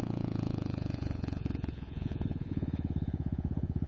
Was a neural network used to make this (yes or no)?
yes